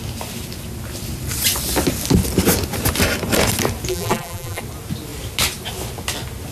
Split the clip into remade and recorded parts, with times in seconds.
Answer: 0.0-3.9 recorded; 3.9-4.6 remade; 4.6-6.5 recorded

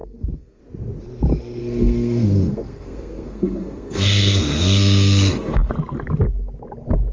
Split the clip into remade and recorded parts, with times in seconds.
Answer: 0.0-0.6 remade; 0.6-1.6 recorded; 1.6-5.7 remade; 5.7-7.1 recorded

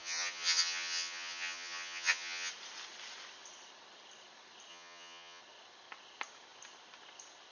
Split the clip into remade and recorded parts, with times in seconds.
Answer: 0.0-2.5 remade; 2.5-4.7 recorded; 4.7-5.4 remade; 5.4-7.5 recorded

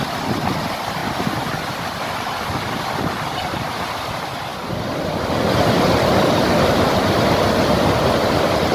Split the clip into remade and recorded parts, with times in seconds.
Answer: 0.0-8.7 recorded